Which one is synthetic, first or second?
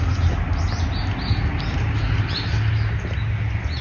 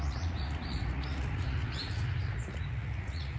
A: second